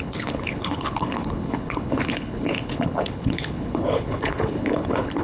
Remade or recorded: remade